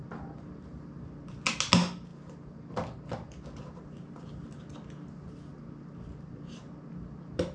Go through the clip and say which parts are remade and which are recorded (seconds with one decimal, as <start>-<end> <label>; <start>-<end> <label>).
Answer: 0.0-1.0 remade; 1.0-2.1 recorded; 2.1-3.8 remade; 3.8-5.5 recorded; 5.5-6.5 remade; 6.5-7.5 recorded